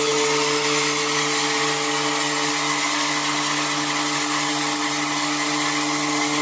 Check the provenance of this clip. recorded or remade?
recorded